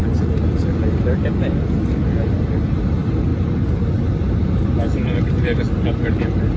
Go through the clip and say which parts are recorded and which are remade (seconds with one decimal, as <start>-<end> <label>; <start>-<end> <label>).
0.0-3.3 recorded; 3.3-6.6 remade